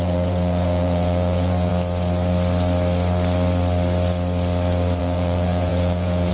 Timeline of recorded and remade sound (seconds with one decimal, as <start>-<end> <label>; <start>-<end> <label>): 0.0-1.7 remade; 1.7-5.0 recorded; 5.0-6.3 remade